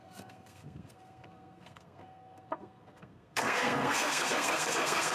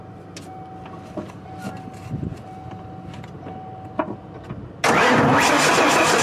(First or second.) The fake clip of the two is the first